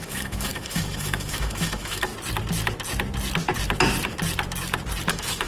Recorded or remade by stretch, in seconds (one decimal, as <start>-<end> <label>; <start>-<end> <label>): 0.0-2.1 remade; 2.1-5.1 recorded; 5.1-5.5 remade